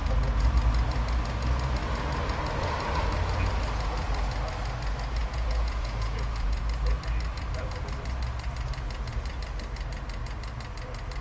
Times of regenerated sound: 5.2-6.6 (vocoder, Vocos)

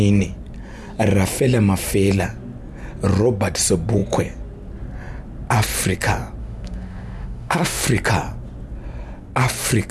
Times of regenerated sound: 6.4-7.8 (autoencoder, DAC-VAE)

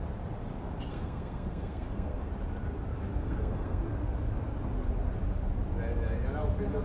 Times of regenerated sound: 0.9-2.3 (codec, SNAC); 3.2-3.8